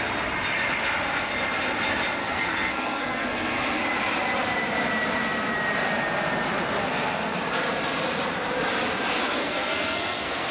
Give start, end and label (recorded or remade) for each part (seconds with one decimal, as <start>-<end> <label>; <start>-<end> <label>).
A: 0.0-2.2 recorded; 2.2-3.8 remade; 3.8-6.8 recorded; 6.8-7.4 remade; 7.4-9.4 recorded; 9.4-10.5 remade